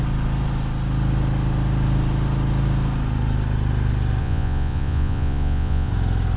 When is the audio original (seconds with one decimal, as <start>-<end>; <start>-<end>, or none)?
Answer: 0.0-4.2; 5.9-6.4